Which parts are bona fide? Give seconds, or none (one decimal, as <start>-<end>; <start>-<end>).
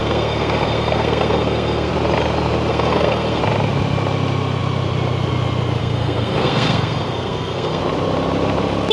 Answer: 1.9-2.7; 3.4-5.8; 7.8-8.9